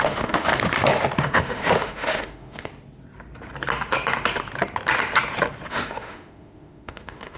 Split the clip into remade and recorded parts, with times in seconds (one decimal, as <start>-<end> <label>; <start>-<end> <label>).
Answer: 0.0-0.5 remade; 0.5-1.2 recorded; 1.2-2.7 remade; 2.7-5.7 recorded; 5.7-7.4 remade